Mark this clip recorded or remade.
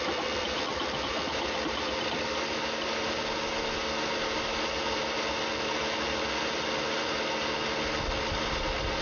recorded